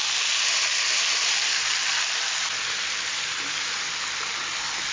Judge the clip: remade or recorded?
recorded